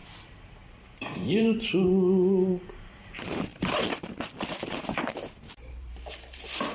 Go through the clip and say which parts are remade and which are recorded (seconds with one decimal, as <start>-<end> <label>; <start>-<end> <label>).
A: 0.0-6.7 remade